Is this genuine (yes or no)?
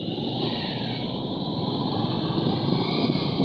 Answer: no